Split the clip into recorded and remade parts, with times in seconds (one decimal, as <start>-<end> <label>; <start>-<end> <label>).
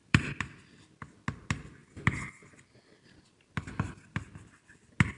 0.0-0.7 remade; 0.7-5.2 recorded